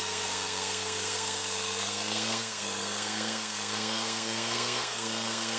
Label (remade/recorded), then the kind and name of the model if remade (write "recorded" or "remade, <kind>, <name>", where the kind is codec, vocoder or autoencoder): remade, codec, SNAC